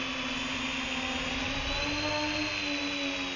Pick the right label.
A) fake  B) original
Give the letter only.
B